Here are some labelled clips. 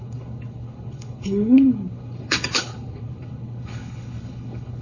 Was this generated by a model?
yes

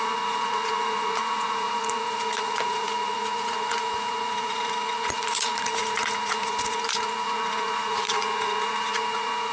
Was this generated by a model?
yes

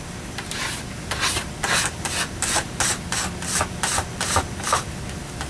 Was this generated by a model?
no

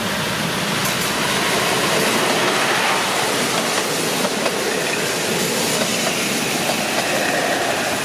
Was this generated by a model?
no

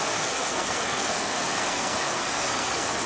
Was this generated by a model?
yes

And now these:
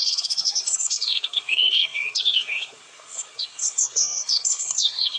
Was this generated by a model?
yes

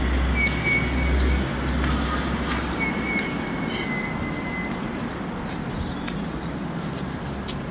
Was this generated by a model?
no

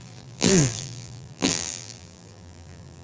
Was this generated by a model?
yes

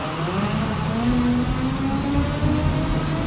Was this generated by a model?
no